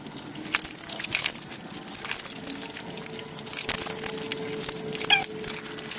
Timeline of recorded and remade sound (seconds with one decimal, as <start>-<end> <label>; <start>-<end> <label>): 0.0-6.0 recorded